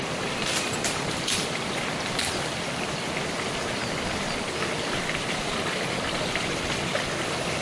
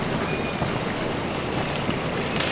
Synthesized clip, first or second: first